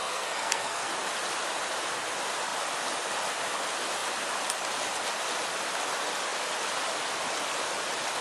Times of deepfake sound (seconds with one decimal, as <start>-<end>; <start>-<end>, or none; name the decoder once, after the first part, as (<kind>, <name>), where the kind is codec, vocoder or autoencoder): 0.0-0.9 (codec, SNAC)